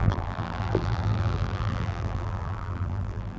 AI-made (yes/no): yes